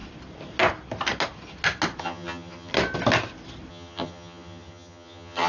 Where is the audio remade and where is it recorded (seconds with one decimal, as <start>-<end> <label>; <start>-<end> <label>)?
0.0-2.0 recorded; 2.0-2.7 remade; 2.7-3.7 recorded; 3.7-5.5 remade